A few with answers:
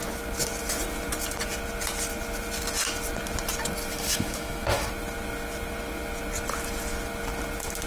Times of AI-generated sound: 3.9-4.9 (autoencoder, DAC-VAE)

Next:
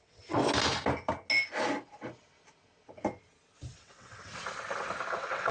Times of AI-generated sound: 0.0-0.4 (vocoder, WaveNeXt); 3.7-4.3; 5.1-5.5

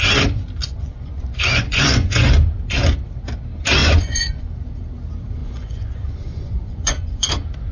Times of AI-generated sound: 0.6-2.3 (vocoder, Vocos); 3.8-4.5; 5.4-7.3

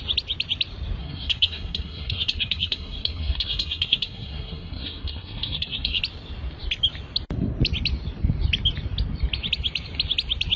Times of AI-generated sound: 1.0-6.0 (codec, SNAC)

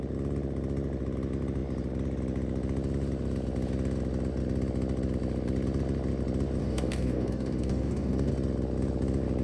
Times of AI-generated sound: 6.6-8.3 (codec, DAC)

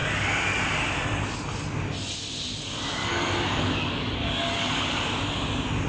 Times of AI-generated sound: 3.0-5.1 (codec, DAC)

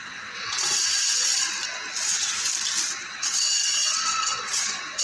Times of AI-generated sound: 0.0-1.3 (vocoder, WaveNeXt); 2.0-2.5; 3.0-5.0

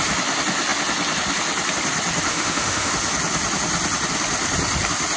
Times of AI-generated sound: 2.3-2.9 (autoencoder, DAC-VAE)